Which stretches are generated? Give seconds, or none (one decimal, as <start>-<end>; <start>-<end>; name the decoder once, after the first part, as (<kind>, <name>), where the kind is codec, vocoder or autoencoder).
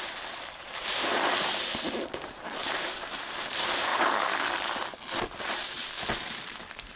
0.0-1.7 (vocoder, BigVGAN v2); 2.3-3.9; 5.5-7.0